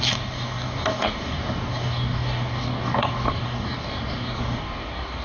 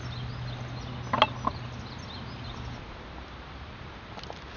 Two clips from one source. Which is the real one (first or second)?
second